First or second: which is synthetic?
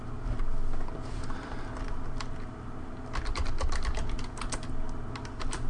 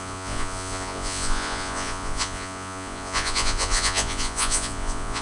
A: second